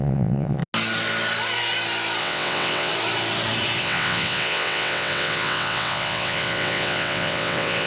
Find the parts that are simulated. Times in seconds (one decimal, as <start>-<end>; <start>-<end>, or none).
0.0-0.6; 2.2-2.9; 3.8-7.9